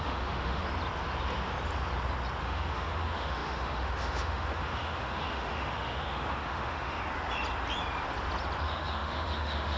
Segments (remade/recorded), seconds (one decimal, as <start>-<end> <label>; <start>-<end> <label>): 0.0-0.6 remade; 0.6-2.4 recorded; 2.4-7.0 remade; 7.0-8.6 recorded; 8.6-9.8 remade